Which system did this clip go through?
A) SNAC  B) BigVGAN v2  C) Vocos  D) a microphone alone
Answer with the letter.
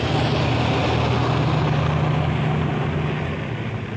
D